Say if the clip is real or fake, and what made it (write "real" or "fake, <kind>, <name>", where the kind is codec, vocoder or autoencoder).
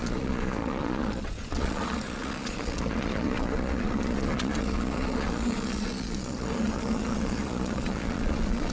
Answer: fake, vocoder, Vocos